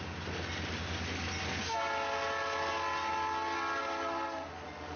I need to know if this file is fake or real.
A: real